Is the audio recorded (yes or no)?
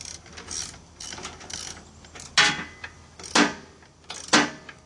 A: yes